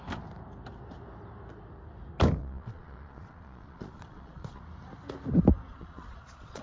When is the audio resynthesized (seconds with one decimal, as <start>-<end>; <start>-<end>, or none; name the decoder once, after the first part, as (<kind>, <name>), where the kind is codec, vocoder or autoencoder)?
2.4-4.6 (vocoder, Vocos); 5.7-6.6